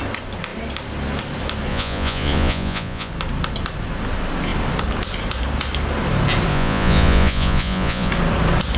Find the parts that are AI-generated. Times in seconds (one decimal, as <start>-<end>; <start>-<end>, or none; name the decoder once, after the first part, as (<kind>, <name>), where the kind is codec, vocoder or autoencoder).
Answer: 1.7-3.1 (vocoder, Vocos); 6.5-8.1